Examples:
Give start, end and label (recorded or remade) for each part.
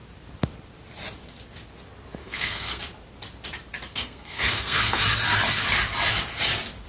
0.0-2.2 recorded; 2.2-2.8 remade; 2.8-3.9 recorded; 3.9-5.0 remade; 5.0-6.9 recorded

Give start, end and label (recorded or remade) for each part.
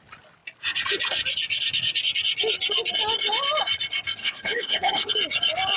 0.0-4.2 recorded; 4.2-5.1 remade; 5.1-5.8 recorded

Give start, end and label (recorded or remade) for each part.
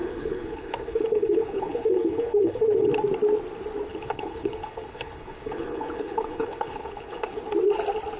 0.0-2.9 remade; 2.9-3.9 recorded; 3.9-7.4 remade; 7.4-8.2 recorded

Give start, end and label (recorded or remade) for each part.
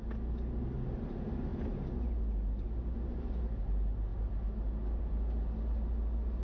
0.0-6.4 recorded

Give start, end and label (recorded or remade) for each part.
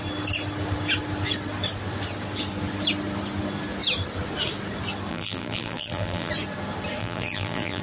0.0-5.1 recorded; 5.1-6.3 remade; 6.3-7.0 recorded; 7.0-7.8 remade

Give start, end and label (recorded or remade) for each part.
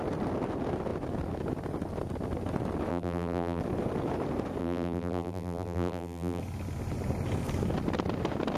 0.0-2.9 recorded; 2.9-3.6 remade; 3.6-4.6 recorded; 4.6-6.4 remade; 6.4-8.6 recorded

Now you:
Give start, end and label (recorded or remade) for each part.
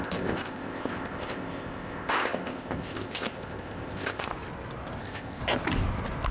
0.0-4.3 remade; 4.3-5.0 recorded; 5.0-5.4 remade; 5.4-6.3 recorded